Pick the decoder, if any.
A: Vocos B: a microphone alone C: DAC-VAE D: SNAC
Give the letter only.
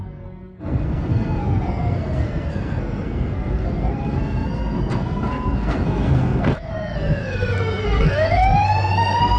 D